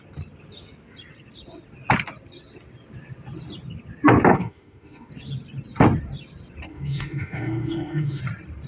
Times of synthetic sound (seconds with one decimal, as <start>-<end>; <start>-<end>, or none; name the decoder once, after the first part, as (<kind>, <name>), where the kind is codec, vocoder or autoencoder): 4.3-5.1 (autoencoder, DAC-VAE); 6.7-8.2